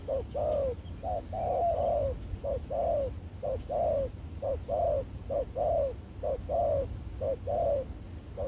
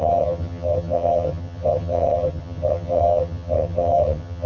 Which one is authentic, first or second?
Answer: first